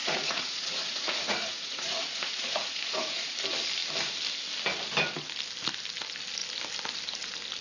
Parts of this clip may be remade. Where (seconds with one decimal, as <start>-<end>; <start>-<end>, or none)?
0.0-3.3